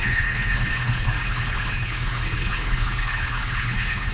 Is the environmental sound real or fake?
fake